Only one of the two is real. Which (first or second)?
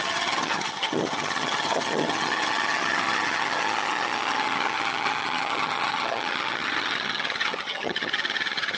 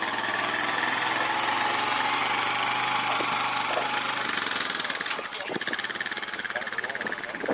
second